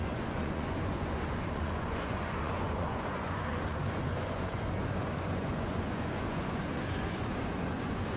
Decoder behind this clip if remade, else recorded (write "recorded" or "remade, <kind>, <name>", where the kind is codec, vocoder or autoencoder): remade, vocoder, Vocos